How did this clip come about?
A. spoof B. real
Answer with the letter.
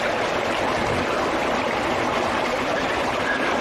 B